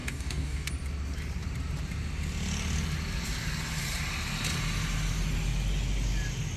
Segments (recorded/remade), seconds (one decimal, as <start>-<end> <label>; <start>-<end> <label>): 0.0-0.7 remade; 0.7-6.6 recorded